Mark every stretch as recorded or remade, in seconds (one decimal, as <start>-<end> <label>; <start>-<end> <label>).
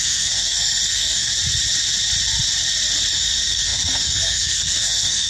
0.0-1.3 remade; 1.3-3.1 recorded; 3.1-5.3 remade